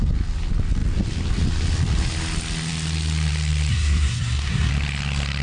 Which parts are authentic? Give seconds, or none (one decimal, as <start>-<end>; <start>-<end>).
0.0-3.7; 4.7-5.4